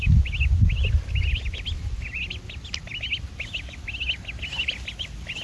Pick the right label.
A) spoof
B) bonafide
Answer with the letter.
B